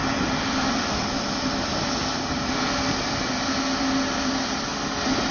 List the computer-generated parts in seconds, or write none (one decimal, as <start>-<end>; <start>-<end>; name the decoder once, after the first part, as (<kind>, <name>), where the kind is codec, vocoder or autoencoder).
none